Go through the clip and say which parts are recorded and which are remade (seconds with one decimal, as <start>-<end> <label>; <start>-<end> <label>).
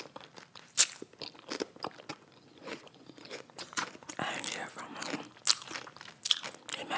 0.0-2.1 recorded; 2.1-4.1 remade; 4.1-7.0 recorded